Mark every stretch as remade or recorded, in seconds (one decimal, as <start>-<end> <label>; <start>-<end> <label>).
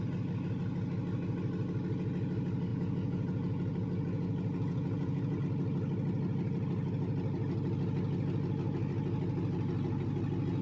0.0-2.7 recorded; 2.7-5.4 remade; 5.4-10.6 recorded